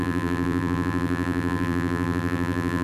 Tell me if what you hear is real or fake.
fake